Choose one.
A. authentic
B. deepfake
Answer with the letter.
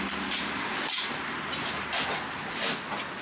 A